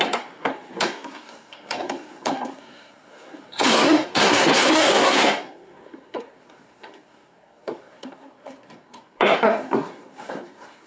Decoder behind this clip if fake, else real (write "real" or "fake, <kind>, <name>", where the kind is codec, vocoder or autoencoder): fake, codec, SNAC